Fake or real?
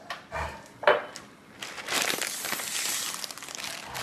real